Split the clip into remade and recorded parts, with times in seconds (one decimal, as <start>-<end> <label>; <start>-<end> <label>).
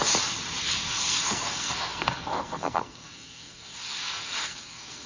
0.0-0.6 recorded; 0.6-5.1 remade